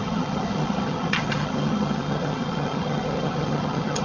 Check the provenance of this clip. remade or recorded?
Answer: remade